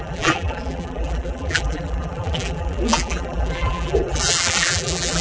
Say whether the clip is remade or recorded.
remade